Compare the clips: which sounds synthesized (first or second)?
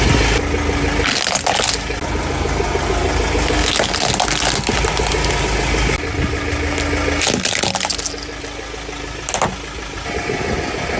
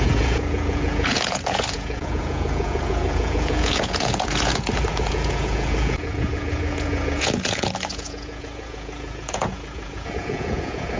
second